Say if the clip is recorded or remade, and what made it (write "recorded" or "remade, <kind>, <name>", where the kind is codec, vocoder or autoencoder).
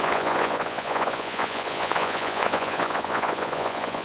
remade, vocoder, Vocos